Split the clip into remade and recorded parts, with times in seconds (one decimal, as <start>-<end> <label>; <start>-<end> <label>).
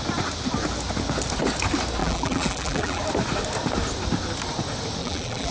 0.0-2.0 recorded; 2.0-3.0 remade; 3.0-5.0 recorded; 5.0-5.5 remade